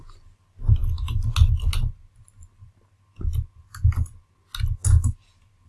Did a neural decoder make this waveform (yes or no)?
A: no